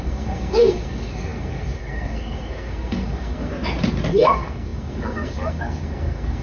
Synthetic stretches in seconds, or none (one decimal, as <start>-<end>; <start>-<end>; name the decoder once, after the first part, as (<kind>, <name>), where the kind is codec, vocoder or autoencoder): 0.0-3.5 (codec, SNAC); 4.1-6.4